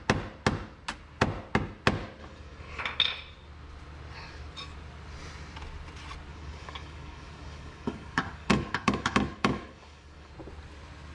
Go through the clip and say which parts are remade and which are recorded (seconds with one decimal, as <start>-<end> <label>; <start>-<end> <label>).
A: 0.0-2.2 recorded; 2.2-2.8 remade; 2.8-6.3 recorded; 6.3-10.3 remade; 10.3-11.1 recorded